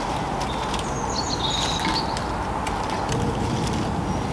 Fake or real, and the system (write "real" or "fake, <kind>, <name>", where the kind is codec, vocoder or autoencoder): real